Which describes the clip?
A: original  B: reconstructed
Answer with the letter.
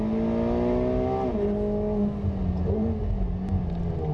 A